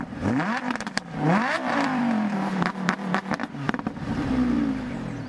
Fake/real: fake